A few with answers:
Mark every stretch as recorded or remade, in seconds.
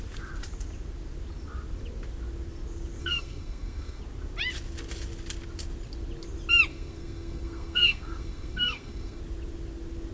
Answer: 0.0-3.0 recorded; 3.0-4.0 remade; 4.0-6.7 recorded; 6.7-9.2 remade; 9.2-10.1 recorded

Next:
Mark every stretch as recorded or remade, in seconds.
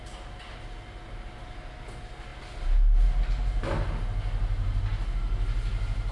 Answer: 0.0-6.1 recorded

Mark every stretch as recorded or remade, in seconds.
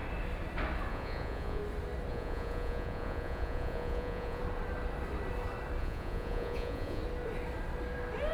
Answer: 0.0-0.9 recorded; 0.9-1.6 remade; 1.6-2.1 recorded; 2.1-4.4 remade; 4.4-5.8 recorded; 5.8-7.0 remade; 7.0-8.3 recorded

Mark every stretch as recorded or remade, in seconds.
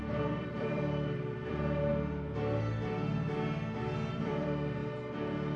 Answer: 0.0-1.9 remade; 1.9-4.1 recorded; 4.1-4.8 remade; 4.8-5.6 recorded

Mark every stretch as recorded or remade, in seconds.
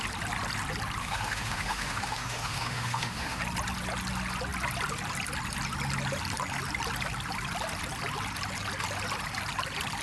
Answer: 0.0-1.0 recorded; 1.0-3.4 remade; 3.4-10.0 recorded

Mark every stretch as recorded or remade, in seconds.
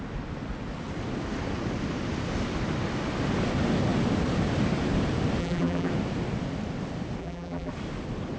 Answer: 0.0-5.4 recorded; 5.4-5.9 remade; 5.9-7.2 recorded; 7.2-7.7 remade; 7.7-8.4 recorded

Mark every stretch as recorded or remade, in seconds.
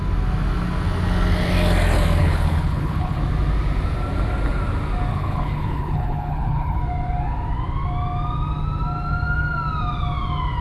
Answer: 0.0-2.2 recorded; 2.2-3.2 remade; 3.2-5.1 recorded; 5.1-6.8 remade; 6.8-10.6 recorded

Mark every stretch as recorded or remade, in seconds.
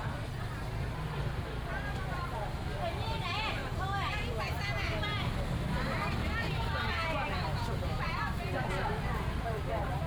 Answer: 0.0-10.1 recorded